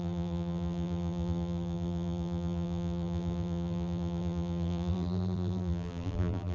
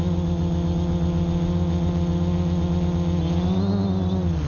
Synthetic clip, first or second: first